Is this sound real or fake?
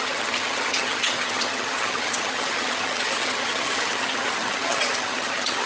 fake